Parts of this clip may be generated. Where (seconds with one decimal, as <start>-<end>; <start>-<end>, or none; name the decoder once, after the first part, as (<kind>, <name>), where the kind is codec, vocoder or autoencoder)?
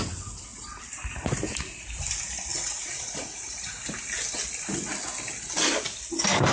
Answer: 2.5-3.8 (vocoder, Vocos)